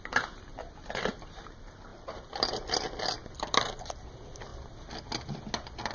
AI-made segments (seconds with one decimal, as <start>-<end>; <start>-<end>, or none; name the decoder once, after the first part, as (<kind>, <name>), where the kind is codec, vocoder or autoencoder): none